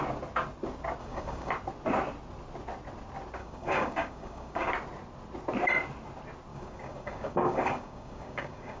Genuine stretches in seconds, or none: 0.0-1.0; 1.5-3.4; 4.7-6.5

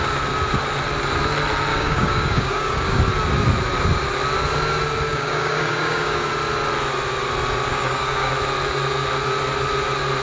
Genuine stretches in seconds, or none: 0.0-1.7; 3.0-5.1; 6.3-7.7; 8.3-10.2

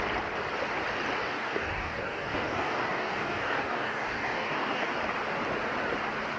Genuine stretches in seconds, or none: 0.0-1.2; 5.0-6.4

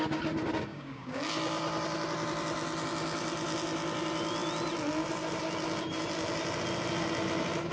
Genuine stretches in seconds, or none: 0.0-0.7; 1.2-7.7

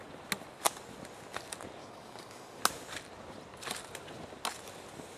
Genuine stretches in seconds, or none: 0.0-1.8; 2.6-5.2

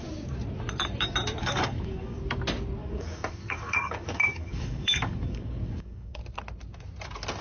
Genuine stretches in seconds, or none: 0.0-1.4; 2.2-2.8; 6.2-7.4